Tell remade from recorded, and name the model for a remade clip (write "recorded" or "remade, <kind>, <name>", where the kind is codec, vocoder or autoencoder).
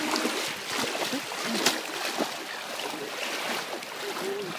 recorded